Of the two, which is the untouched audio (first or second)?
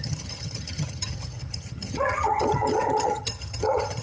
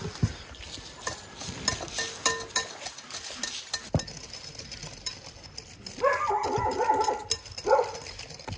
second